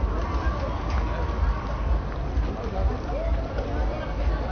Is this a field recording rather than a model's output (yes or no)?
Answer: yes